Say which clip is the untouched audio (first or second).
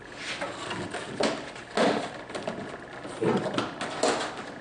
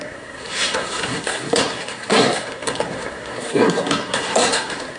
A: first